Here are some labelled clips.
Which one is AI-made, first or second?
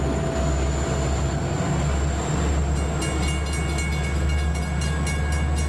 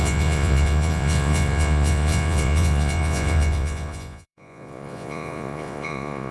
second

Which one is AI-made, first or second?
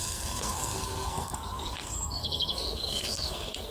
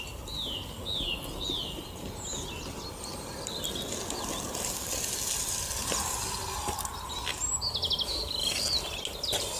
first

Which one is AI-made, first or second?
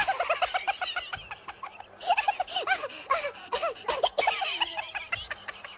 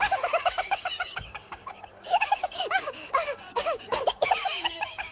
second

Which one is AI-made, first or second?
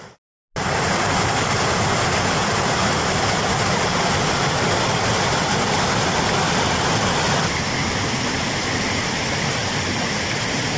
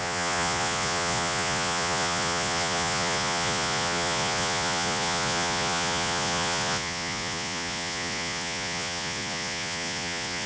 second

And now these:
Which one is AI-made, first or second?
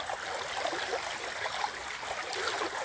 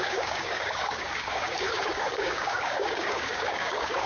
second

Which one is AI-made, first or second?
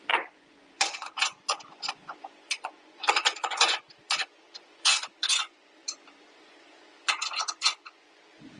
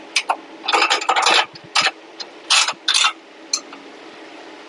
first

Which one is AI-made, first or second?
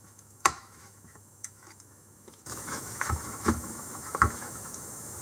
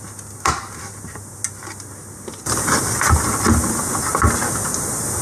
first